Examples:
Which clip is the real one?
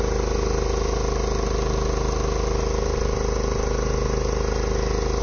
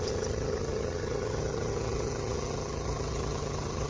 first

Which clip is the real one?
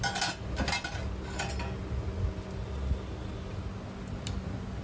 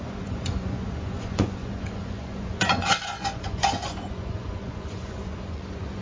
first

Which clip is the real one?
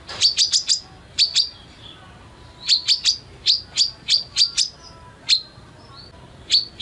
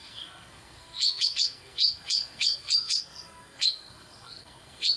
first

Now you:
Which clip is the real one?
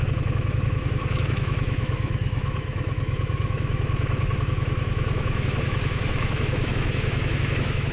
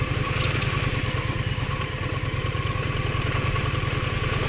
second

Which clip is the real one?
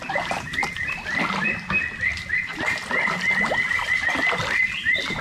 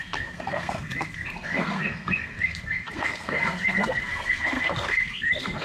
first